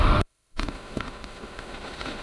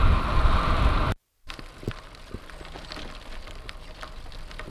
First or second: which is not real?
first